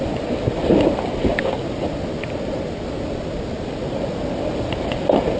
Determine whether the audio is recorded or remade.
recorded